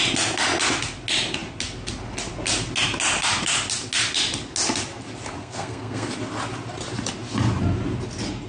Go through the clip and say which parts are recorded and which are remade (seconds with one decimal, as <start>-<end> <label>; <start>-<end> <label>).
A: 0.0-5.4 recorded; 5.4-6.1 remade; 6.1-8.5 recorded